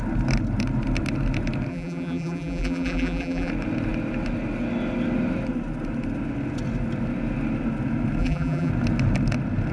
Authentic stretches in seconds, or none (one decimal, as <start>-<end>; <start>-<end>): 0.0-1.7; 3.5-8.2; 8.7-9.7